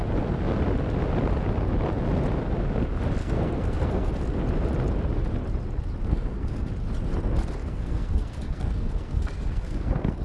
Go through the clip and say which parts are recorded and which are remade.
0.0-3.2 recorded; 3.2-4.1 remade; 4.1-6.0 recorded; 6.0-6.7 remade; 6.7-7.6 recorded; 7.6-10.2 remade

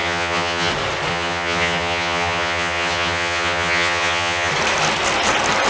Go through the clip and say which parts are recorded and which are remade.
0.0-0.7 remade; 0.7-1.1 recorded; 1.1-4.5 remade; 4.5-5.7 recorded

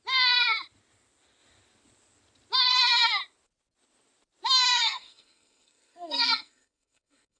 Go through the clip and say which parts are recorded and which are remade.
0.0-4.7 recorded; 4.7-7.4 remade